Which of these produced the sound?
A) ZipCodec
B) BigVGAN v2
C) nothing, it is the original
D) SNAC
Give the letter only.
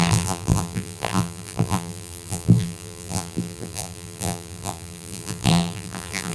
B